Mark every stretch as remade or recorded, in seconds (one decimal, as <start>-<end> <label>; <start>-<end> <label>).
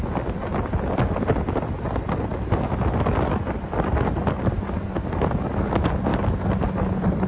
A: 0.0-7.3 recorded